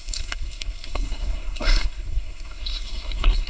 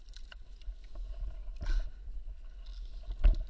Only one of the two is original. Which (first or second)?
second